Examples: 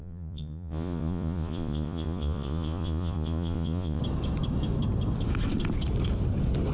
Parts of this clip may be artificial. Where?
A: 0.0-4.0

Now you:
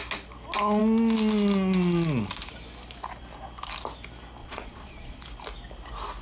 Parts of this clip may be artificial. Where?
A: 4.4-5.2

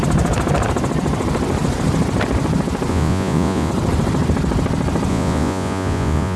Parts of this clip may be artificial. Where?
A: 2.9-3.7; 5.1-6.4